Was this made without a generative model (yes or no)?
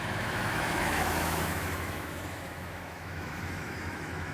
no